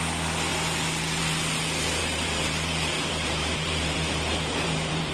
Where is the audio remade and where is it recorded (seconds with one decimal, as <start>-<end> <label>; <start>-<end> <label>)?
0.0-2.0 recorded; 2.0-5.1 remade